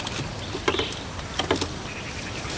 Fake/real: fake